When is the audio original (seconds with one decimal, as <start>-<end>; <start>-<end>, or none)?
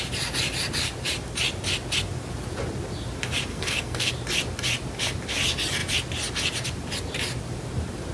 0.0-3.5; 4.1-8.1